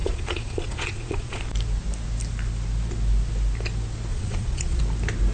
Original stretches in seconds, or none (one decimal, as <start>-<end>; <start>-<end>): 1.4-4.1; 4.8-5.3